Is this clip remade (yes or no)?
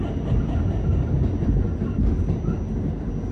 no